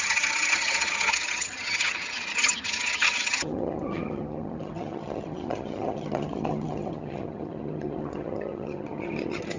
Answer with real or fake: fake